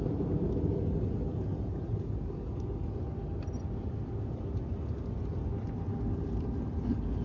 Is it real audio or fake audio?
real